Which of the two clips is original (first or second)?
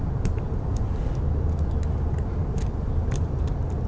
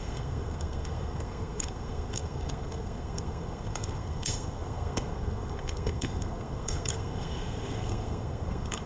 first